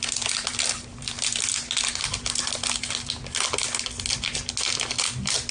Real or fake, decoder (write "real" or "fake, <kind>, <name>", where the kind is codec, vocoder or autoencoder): real